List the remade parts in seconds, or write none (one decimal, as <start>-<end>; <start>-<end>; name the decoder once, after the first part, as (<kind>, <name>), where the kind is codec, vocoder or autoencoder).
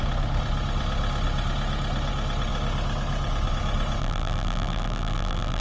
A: 4.0-5.6 (vocoder, BigVGAN v2)